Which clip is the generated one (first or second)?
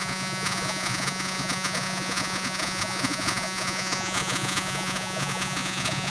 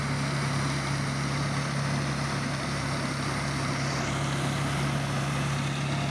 first